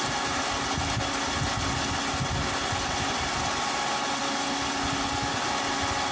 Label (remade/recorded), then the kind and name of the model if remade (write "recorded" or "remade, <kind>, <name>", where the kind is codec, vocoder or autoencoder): recorded